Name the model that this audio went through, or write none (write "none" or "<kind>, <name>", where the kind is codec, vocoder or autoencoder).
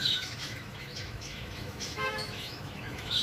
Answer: autoencoder, DAC-VAE